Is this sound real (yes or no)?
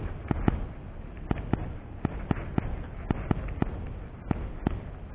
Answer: yes